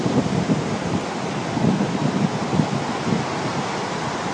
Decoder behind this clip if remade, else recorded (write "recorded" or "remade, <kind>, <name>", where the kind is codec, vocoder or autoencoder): recorded